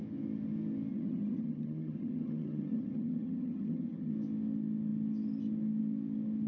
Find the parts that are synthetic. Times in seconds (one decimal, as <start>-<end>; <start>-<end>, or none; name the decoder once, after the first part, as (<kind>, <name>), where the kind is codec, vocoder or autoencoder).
0.9-4.1 (vocoder, HiFi-GAN)